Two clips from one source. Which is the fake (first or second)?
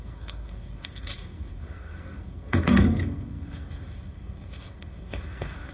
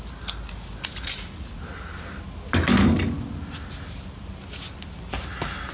first